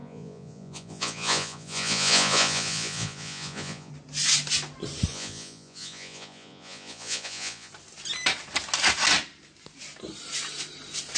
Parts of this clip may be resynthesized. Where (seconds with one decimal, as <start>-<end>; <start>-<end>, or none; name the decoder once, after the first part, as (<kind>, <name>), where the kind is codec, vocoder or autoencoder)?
0.0-3.9 (vocoder, Vocos); 5.1-7.7